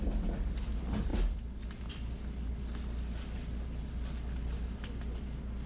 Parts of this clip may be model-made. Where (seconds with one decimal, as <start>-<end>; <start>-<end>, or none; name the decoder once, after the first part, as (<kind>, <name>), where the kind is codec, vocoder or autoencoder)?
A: none